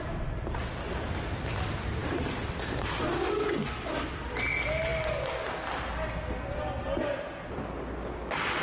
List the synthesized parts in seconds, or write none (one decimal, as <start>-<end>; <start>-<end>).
none